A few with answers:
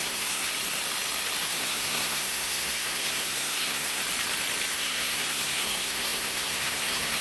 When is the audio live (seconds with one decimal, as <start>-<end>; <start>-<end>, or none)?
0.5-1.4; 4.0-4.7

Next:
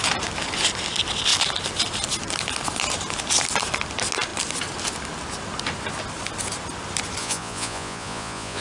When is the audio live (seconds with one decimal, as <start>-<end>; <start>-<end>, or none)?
0.0-7.2

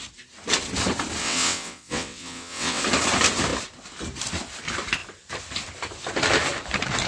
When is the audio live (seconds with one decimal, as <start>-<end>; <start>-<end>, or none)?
0.0-1.2; 2.8-7.1

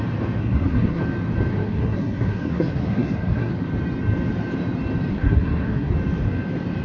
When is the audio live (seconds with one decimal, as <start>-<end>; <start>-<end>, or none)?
0.0-0.4; 1.0-1.5; 3.5-5.1; 5.9-6.8

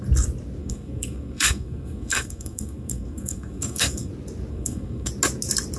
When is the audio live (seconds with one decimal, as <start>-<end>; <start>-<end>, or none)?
0.0-0.6; 4.1-4.5; 5.1-5.8